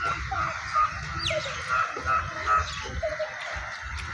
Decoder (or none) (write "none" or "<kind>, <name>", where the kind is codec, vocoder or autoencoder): none